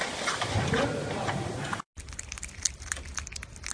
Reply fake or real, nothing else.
real